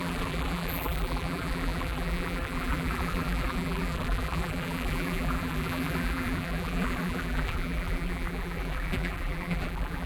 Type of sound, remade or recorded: remade